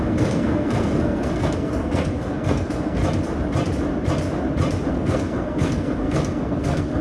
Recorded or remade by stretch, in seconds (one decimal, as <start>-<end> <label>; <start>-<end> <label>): 0.0-3.0 remade; 3.0-4.9 recorded; 4.9-7.0 remade